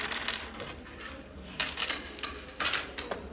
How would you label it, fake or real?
real